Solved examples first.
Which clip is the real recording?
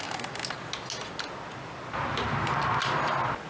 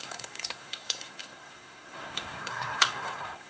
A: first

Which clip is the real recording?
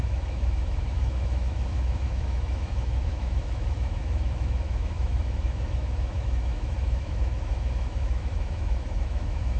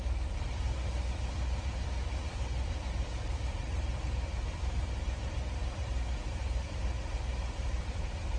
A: second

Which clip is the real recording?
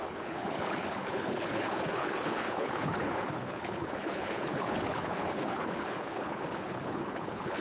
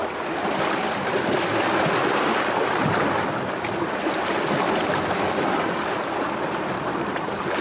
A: second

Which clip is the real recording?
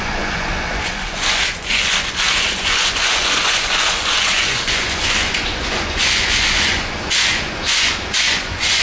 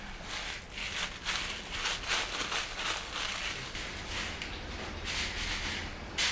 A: second